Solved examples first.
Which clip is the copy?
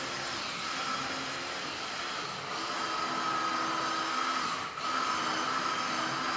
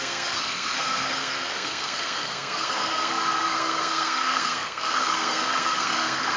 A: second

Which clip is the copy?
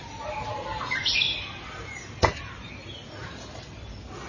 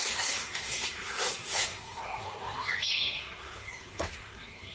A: second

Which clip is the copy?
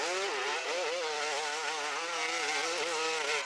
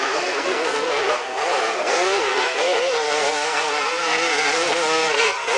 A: second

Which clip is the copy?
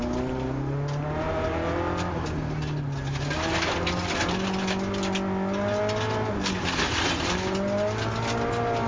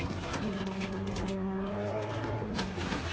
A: second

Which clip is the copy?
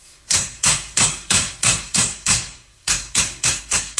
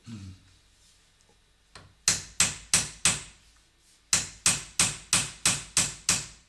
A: first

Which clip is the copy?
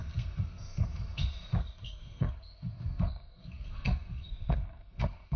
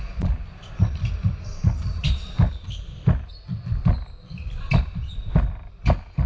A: first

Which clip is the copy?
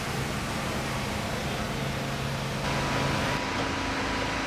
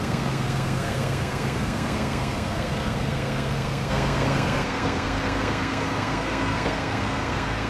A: second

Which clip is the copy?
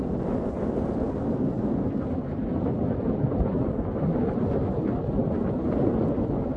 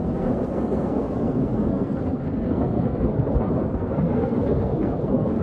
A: second